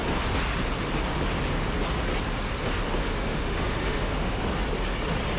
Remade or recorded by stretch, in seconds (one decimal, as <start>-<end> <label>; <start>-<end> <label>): 0.0-3.0 recorded; 3.0-4.4 remade; 4.4-5.4 recorded